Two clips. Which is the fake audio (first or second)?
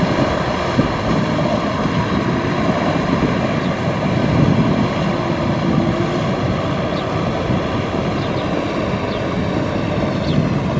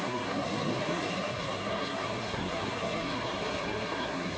second